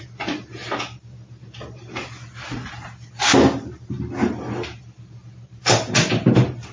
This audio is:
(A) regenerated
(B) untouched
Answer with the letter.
B